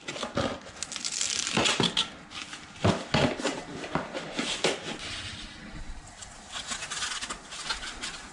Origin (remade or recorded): recorded